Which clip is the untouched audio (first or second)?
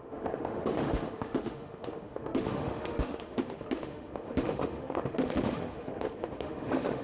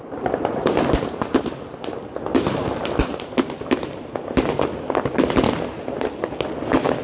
second